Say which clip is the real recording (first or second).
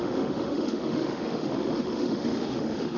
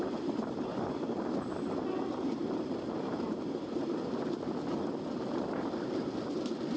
second